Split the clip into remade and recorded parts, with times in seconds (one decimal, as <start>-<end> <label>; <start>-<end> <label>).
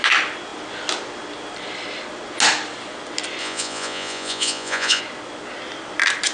0.0-3.4 recorded; 3.4-5.0 remade; 5.0-6.3 recorded